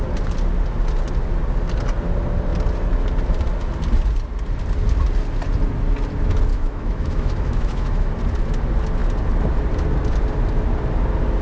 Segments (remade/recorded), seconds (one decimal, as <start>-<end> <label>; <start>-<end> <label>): 0.0-6.5 recorded; 6.5-8.1 remade; 8.1-11.4 recorded